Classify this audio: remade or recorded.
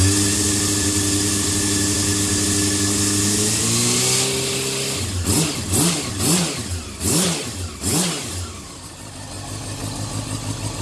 recorded